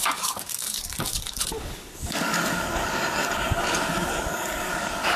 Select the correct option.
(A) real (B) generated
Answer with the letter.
B